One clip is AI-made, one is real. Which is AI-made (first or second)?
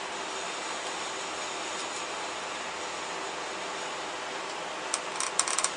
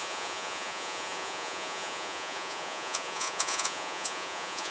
second